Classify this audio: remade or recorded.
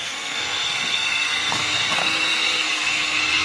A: remade